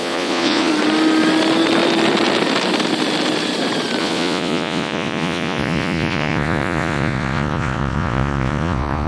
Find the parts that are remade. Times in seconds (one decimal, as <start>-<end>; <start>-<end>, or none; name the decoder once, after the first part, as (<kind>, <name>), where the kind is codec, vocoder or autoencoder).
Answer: 0.0-0.7 (vocoder, Vocos); 4.0-9.1